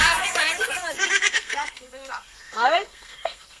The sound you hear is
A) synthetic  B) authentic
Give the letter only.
A